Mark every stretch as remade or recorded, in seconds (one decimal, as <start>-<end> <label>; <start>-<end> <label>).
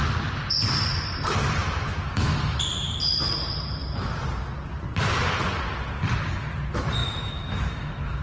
0.0-1.6 recorded; 1.6-2.6 remade; 2.6-7.0 recorded; 7.0-8.2 remade